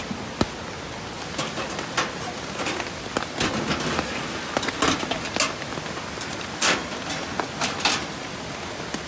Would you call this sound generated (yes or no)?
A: no